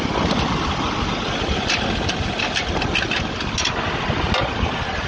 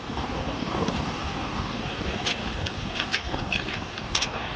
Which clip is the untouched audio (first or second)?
first